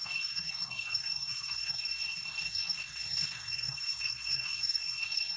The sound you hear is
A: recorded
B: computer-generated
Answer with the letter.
B